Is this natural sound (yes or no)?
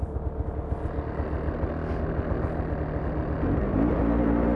yes